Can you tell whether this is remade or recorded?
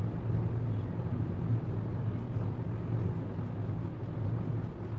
recorded